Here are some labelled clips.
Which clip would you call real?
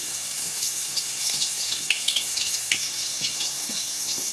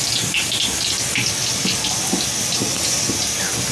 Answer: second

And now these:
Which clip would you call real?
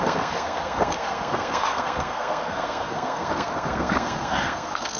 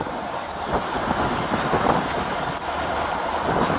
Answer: second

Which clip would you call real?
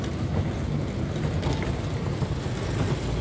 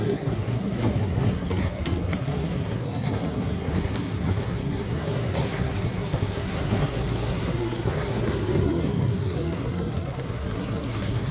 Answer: first